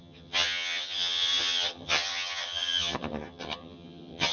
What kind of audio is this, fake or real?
fake